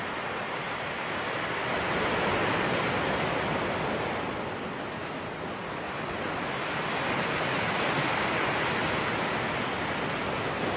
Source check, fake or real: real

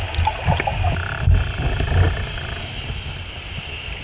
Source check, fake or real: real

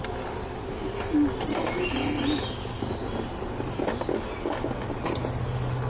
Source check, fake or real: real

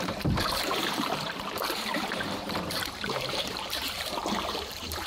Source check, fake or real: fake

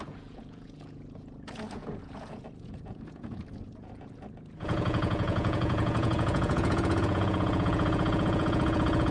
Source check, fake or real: fake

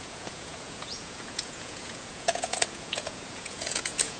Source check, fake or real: fake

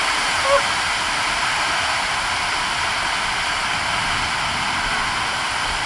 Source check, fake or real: real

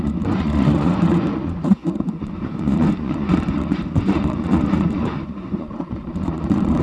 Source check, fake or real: fake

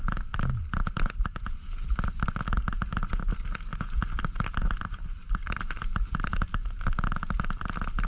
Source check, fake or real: real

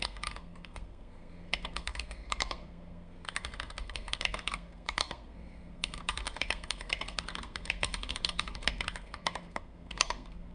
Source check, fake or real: fake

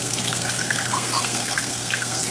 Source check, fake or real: fake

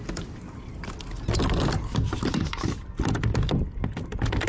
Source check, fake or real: real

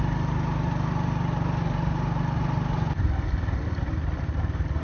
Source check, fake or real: real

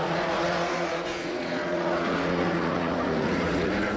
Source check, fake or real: fake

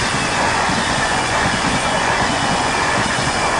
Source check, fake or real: fake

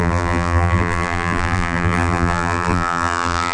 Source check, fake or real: fake